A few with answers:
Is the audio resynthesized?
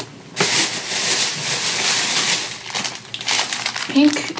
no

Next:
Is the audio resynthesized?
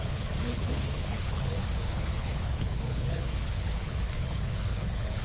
yes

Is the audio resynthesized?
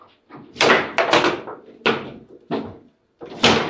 no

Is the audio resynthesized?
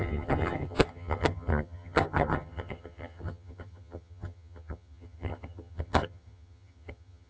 yes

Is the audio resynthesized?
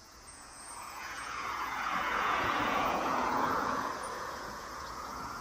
yes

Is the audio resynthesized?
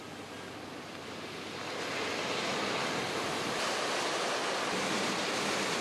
no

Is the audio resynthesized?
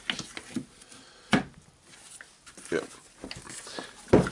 no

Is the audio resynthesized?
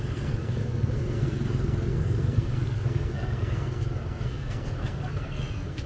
yes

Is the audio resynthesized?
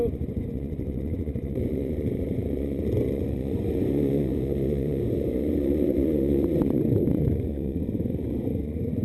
yes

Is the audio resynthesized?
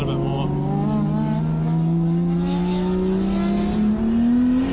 no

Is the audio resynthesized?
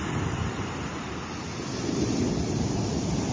yes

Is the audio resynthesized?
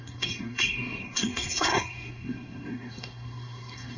yes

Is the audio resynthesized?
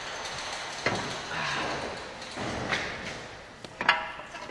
no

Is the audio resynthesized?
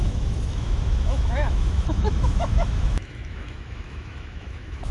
yes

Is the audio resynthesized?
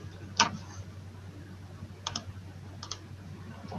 no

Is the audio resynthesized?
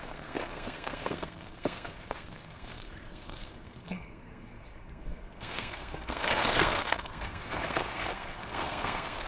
yes